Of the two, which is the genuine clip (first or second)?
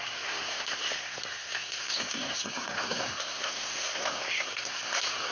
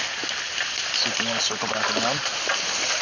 second